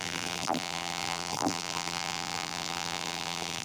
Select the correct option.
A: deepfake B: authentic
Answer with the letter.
A